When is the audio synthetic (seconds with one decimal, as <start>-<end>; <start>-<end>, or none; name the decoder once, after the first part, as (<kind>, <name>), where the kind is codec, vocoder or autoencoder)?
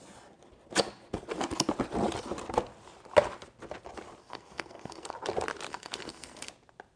4.2-5.1 (codec, SNAC); 5.7-6.5